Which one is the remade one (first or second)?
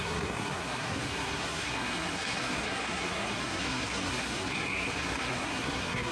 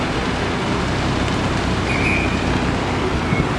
first